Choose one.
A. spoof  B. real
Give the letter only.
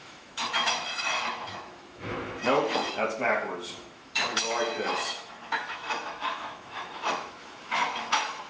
A